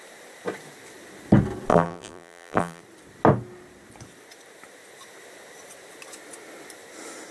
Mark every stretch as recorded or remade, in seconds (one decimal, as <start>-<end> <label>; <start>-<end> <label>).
0.0-1.7 recorded; 1.7-2.8 remade; 2.8-7.3 recorded